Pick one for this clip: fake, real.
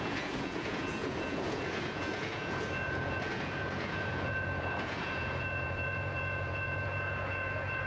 fake